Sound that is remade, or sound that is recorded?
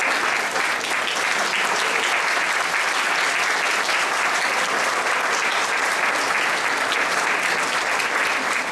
recorded